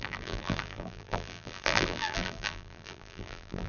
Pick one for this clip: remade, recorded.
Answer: remade